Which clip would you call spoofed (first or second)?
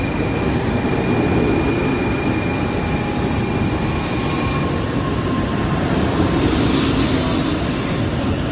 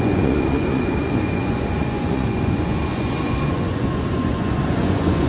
second